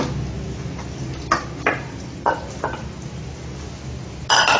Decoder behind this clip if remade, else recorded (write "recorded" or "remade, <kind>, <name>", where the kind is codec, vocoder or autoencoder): recorded